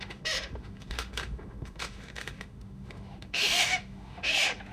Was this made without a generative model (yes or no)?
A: no